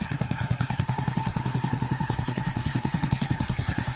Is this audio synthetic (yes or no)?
yes